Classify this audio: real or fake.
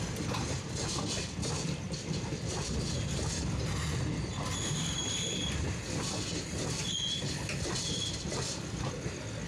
real